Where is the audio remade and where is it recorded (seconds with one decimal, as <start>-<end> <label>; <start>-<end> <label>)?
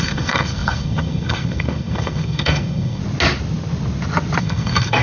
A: 0.0-3.0 remade; 3.0-4.4 recorded; 4.4-5.0 remade